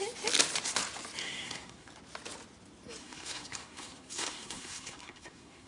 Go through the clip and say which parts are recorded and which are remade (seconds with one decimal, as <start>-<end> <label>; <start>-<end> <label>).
0.0-1.2 recorded; 1.2-1.9 remade; 1.9-3.0 recorded; 3.0-5.7 remade